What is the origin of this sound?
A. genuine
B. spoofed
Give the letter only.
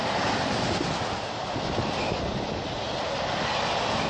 A